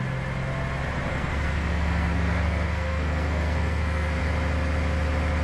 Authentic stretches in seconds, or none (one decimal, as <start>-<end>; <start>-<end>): 0.0-1.1; 4.2-5.4